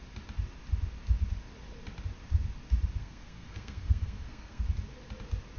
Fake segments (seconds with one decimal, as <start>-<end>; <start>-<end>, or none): 3.0-4.6